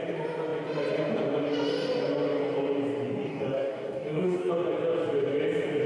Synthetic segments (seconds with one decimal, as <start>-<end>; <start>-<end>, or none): 3.3-4.5